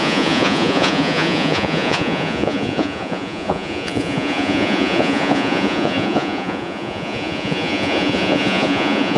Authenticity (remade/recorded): remade